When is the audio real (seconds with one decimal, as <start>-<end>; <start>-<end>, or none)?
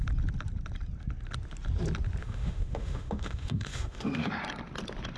0.0-2.2; 4.3-5.2